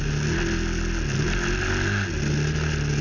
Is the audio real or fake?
real